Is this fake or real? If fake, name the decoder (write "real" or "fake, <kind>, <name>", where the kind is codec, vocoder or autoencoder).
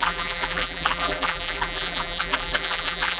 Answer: fake, vocoder, BigVGAN v2